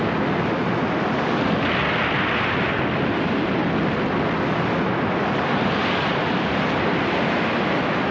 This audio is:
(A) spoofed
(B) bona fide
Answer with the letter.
B